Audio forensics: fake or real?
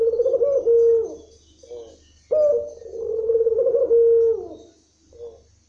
real